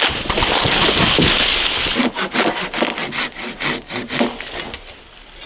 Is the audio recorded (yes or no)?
yes